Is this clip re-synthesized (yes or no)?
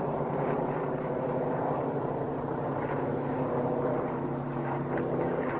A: yes